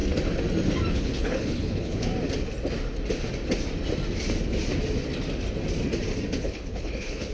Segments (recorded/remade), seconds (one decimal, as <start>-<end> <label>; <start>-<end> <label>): 0.0-0.9 recorded; 0.9-2.1 remade; 2.1-6.3 recorded; 6.3-7.3 remade